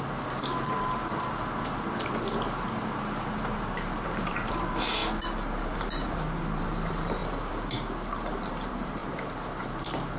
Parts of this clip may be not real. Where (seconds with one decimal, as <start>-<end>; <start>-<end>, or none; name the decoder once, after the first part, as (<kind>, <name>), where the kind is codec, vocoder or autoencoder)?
0.0-5.0 (vocoder, BigVGAN v2); 5.6-10.2